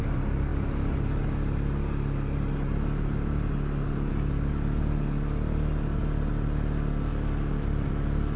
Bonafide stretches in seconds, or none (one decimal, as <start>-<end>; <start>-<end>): 0.0-8.4